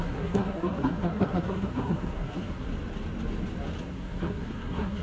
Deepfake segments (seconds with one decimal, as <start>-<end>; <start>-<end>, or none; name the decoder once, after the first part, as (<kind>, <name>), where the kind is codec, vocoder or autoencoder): 0.0-2.7 (codec, SNAC); 3.8-5.0